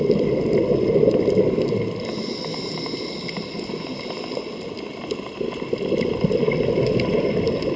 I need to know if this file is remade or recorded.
recorded